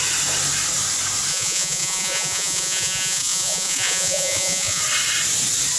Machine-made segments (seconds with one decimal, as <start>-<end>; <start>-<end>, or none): 1.3-4.8

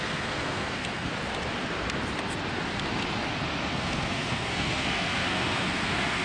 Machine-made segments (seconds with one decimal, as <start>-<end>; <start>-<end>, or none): 0.0-1.1; 3.7-6.2

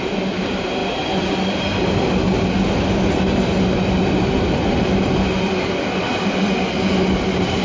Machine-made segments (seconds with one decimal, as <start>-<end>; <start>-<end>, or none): none

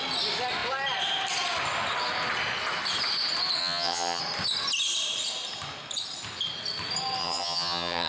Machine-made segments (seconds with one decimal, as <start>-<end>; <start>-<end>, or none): 3.6-4.2; 7.2-8.1

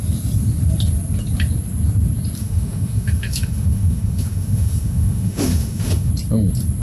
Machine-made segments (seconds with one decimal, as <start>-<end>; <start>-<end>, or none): 2.4-6.1

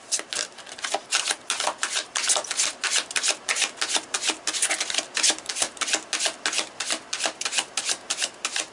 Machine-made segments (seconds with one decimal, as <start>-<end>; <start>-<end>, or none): none

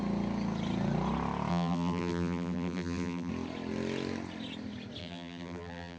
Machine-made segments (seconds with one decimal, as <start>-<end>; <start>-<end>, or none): 1.5-3.3; 5.0-6.0